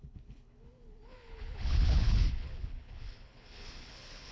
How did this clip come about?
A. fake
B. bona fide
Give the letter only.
A